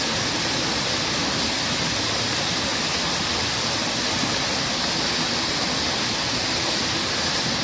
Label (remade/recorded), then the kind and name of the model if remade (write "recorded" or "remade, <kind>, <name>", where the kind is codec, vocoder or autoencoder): recorded